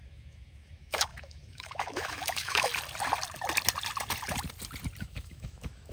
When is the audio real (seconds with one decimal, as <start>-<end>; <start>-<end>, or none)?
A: 2.7-5.0

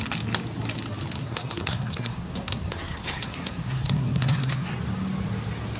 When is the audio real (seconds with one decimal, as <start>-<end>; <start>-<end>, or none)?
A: 0.0-1.2; 4.7-5.8

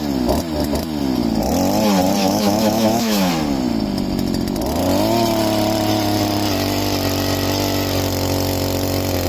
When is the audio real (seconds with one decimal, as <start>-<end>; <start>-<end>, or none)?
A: 0.0-2.2; 3.3-9.3

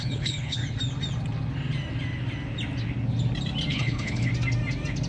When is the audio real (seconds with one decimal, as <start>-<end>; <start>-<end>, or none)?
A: 0.6-3.7; 4.3-5.1